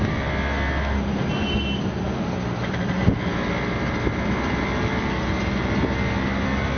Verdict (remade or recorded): recorded